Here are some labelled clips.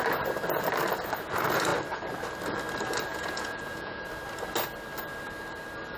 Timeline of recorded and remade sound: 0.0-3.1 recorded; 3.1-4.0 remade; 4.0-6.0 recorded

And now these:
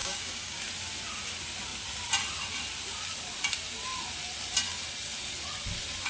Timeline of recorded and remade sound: 0.0-0.6 remade; 0.6-6.1 recorded

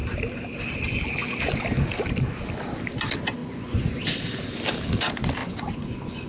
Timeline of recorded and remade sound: 0.0-3.4 recorded; 3.4-4.0 remade; 4.0-5.4 recorded; 5.4-6.3 remade

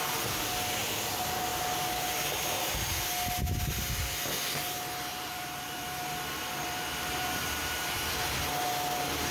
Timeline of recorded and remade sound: 0.0-5.1 recorded; 5.1-8.4 remade; 8.4-9.3 recorded

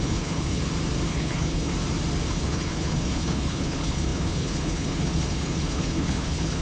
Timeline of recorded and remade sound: 0.0-0.6 remade; 0.6-1.1 recorded; 1.1-1.7 remade; 1.7-2.3 recorded; 2.3-6.6 remade

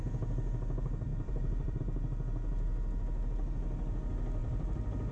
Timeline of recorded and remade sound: 0.0-1.1 recorded; 1.1-1.8 remade; 1.8-4.4 recorded; 4.4-5.1 remade

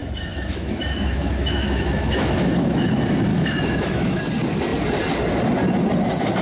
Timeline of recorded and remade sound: 0.0-2.9 remade; 2.9-3.3 recorded; 3.3-4.2 remade; 4.2-6.4 recorded